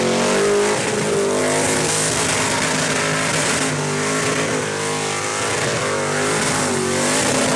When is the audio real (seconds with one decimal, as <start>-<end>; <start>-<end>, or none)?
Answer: 0.0-7.6